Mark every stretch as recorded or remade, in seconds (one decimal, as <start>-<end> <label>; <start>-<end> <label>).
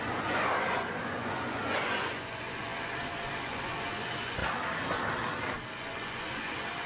0.0-4.4 remade; 4.4-5.8 recorded; 5.8-6.9 remade